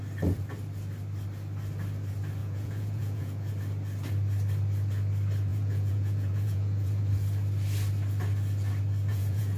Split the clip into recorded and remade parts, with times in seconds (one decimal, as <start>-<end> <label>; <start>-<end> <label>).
0.0-2.4 recorded; 2.4-3.5 remade; 3.5-5.5 recorded; 5.5-7.1 remade; 7.1-9.1 recorded; 9.1-9.6 remade